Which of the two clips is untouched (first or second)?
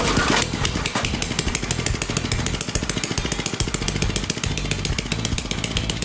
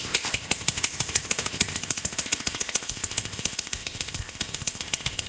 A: first